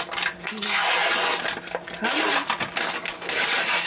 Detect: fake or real real